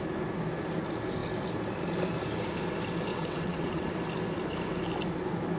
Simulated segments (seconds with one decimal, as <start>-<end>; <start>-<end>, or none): 3.1-3.9